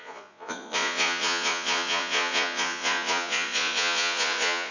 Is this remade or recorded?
remade